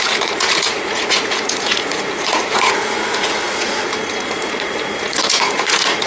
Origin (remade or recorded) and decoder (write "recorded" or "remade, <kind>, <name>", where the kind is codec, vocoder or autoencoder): remade, vocoder, Vocos